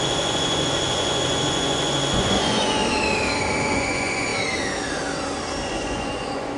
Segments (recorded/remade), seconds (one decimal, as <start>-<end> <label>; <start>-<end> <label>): 0.0-2.8 remade; 2.8-3.6 recorded; 3.6-4.3 remade; 4.3-5.7 recorded; 5.7-6.6 remade